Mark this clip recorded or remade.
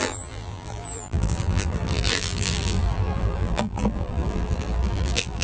remade